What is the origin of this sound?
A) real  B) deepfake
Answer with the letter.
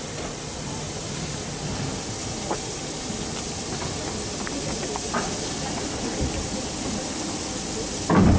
A